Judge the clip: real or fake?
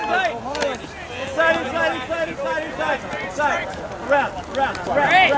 real